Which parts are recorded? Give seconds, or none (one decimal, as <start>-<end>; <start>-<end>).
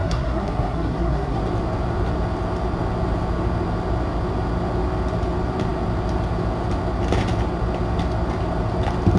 1.4-9.2